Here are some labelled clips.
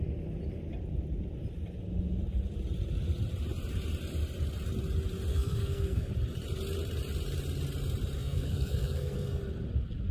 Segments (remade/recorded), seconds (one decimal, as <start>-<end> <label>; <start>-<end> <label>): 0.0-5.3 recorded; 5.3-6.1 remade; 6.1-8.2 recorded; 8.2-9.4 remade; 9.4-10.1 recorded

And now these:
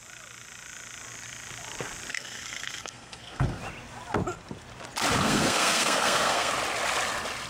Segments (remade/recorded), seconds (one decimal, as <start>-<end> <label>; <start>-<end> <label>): 0.0-2.1 recorded; 2.1-3.6 remade; 3.6-5.2 recorded; 5.2-6.5 remade; 6.5-7.5 recorded

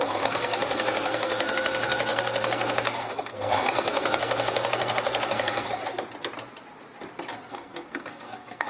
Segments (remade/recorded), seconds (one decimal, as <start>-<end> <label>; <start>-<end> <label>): 0.0-5.8 remade; 5.8-7.5 recorded; 7.5-8.7 remade

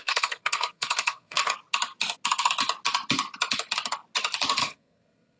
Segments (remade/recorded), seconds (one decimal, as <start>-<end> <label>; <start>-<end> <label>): 0.0-1.4 remade; 1.4-4.6 recorded; 4.6-5.4 remade

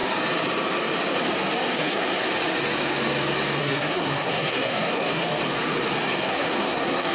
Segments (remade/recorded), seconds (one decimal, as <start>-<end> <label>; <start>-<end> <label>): 0.0-1.8 recorded; 1.8-2.2 remade; 2.2-3.6 recorded; 3.6-5.2 remade; 5.2-6.3 recorded; 6.3-7.1 remade

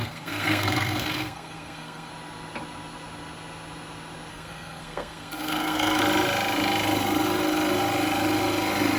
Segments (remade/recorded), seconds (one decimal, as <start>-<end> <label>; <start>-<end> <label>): 0.0-2.1 remade; 2.1-4.3 recorded; 4.3-6.0 remade; 6.0-9.0 recorded

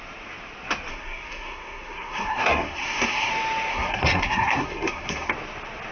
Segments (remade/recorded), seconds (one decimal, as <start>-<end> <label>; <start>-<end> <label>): 0.0-0.9 recorded; 0.9-3.3 remade; 3.3-3.7 recorded; 3.7-5.3 remade; 5.3-5.9 recorded